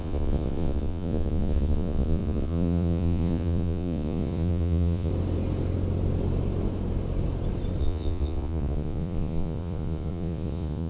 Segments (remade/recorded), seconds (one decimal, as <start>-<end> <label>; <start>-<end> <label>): 0.0-5.1 remade; 5.1-7.8 recorded; 7.8-10.9 remade